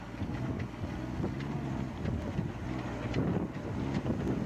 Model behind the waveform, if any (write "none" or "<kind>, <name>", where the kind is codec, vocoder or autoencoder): none